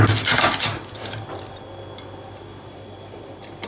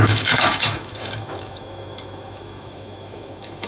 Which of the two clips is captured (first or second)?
first